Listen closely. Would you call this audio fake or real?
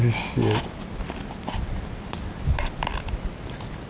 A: real